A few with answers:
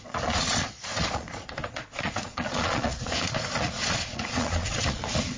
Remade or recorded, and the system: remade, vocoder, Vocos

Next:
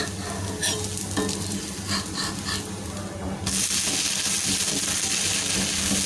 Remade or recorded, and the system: recorded